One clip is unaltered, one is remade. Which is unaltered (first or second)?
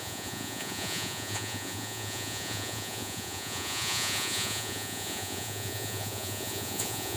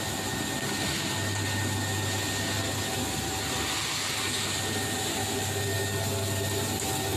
second